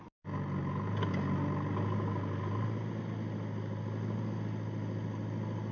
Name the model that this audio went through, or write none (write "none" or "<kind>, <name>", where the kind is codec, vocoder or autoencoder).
none